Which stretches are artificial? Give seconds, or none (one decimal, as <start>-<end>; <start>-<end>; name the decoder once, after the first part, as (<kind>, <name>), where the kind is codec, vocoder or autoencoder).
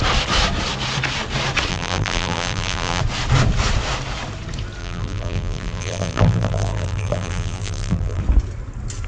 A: 1.7-3.0 (vocoder, BigVGAN v2); 4.8-8.2